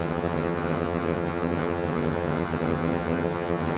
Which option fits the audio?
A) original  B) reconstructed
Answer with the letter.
B